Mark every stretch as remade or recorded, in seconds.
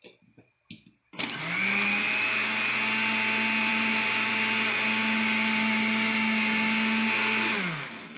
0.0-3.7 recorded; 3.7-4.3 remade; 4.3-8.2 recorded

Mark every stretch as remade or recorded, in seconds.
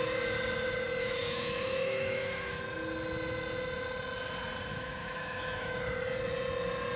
0.0-1.0 recorded; 1.0-2.6 remade; 2.6-4.7 recorded; 4.7-5.8 remade; 5.8-7.0 recorded